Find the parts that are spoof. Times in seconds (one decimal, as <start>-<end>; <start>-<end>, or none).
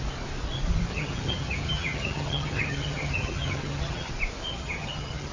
0.9-4.1; 4.5-5.3